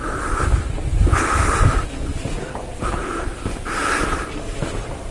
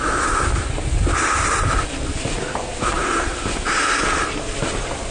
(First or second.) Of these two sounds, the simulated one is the first